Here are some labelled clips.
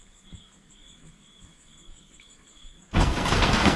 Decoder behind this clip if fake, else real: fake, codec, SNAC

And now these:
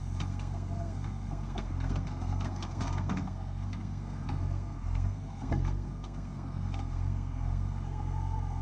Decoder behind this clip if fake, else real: fake, codec, SNAC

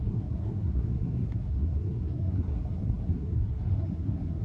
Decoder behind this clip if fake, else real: fake, codec, SNAC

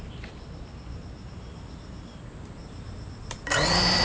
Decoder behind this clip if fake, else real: real